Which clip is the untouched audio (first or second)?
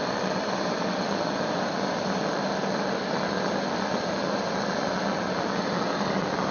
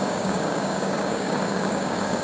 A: first